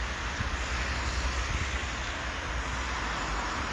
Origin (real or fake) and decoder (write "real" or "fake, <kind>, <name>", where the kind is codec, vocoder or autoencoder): real